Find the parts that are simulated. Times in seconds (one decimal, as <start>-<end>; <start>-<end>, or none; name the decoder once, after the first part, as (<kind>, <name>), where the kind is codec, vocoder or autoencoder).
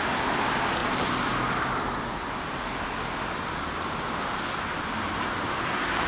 none